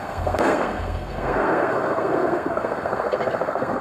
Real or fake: fake